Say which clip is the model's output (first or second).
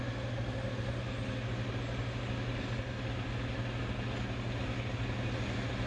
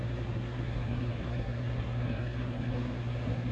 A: second